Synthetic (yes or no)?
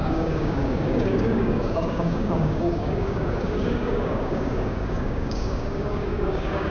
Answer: yes